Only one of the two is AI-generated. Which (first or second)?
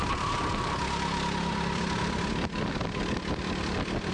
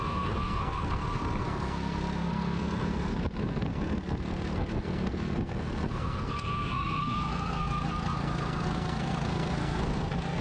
second